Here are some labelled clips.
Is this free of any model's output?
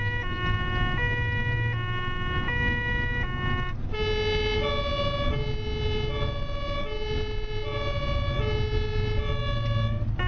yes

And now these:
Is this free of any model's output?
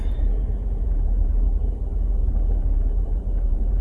no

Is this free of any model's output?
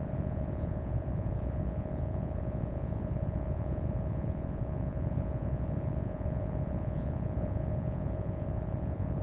no